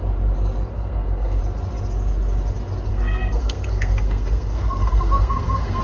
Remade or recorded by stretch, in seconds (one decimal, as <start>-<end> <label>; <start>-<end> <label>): 0.0-0.7 recorded; 0.7-1.4 remade; 1.4-2.9 recorded; 2.9-5.8 remade